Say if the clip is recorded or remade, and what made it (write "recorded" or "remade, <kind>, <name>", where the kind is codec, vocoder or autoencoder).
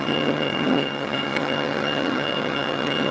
remade, vocoder, HiFi-GAN